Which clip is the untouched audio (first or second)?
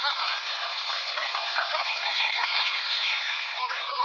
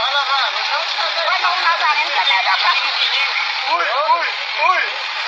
second